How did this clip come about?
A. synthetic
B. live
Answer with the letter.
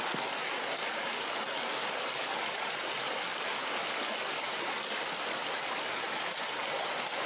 B